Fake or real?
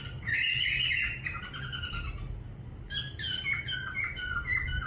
real